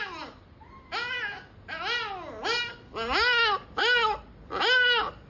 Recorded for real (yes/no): yes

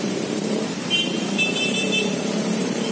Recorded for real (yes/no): no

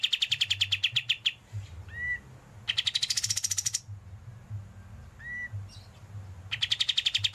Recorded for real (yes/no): yes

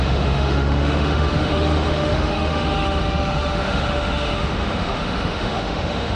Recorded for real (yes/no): no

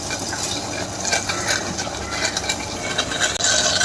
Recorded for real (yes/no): yes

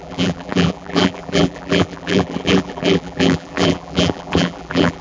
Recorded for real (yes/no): no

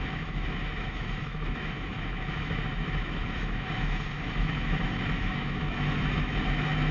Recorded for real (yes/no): no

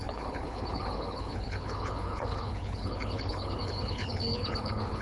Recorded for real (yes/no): no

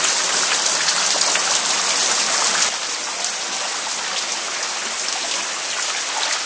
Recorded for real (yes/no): yes